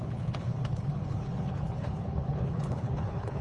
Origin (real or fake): fake